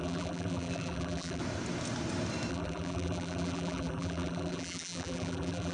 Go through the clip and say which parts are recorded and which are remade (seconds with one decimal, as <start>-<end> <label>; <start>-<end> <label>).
0.0-1.4 remade; 1.4-2.5 recorded; 2.5-5.7 remade